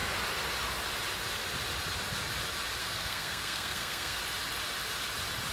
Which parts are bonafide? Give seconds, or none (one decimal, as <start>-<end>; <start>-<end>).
0.0-2.8; 4.2-5.5